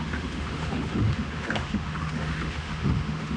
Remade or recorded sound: remade